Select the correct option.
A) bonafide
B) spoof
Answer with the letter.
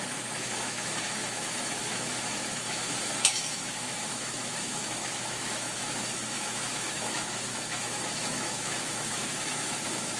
B